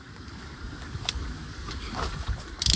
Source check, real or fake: fake